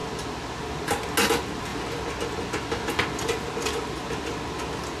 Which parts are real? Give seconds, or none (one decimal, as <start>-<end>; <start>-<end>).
0.0-5.0